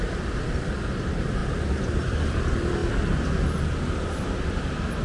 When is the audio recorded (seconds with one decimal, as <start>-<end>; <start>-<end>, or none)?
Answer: 2.8-3.8